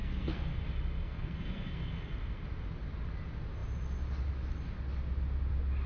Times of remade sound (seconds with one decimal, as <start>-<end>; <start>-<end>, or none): 0.0-0.6; 1.0-2.4